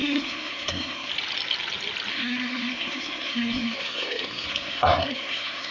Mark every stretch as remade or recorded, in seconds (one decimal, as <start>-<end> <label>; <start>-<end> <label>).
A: 0.0-1.1 remade; 1.1-2.1 recorded; 2.1-5.7 remade